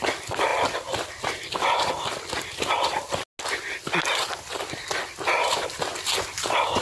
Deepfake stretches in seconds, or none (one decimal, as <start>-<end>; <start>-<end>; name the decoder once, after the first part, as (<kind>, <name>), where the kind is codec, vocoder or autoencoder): none